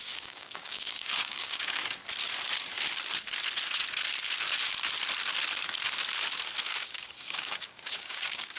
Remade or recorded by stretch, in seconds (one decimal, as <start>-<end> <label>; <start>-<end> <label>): 0.0-2.0 remade; 2.0-6.6 recorded; 6.6-8.6 remade